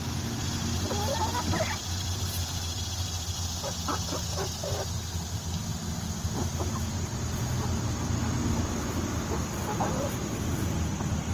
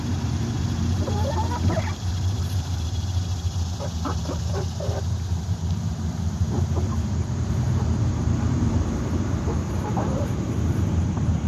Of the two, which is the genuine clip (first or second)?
first